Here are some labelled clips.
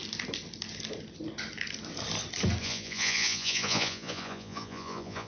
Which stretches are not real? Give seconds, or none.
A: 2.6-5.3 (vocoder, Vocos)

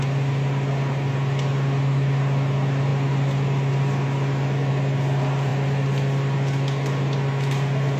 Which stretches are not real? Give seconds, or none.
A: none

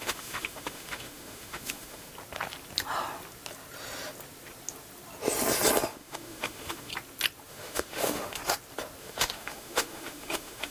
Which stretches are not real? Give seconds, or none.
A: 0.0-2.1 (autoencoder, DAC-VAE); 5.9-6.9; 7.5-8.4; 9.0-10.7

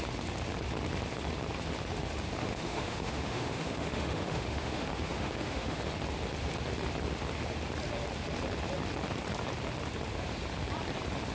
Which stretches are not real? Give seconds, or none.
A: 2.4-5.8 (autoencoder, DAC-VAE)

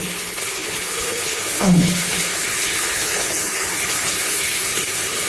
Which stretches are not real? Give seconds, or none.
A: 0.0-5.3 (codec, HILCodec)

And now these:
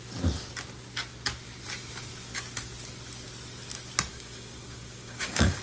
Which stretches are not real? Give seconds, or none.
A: 4.1-5.6 (codec, DAC)

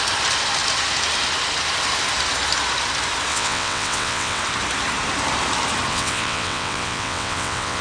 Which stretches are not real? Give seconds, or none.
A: 3.3-4.4 (vocoder, WaveNeXt); 5.9-7.8